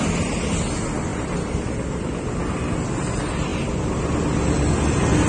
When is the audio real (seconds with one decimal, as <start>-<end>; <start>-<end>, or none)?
0.0-5.3